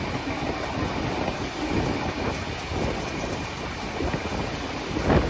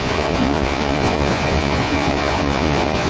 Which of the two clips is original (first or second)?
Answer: first